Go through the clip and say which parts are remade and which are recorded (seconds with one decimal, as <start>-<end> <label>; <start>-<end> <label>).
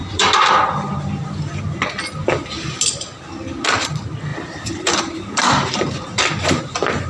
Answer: 0.0-1.4 remade; 1.4-4.3 recorded; 4.3-6.2 remade; 6.2-7.1 recorded